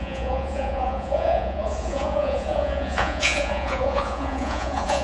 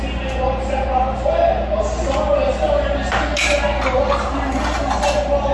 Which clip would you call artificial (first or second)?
first